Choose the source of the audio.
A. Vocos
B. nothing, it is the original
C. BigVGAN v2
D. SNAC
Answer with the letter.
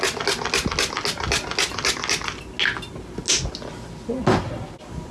B